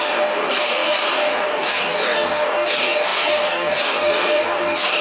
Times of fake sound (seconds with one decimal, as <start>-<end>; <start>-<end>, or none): 0.0-5.0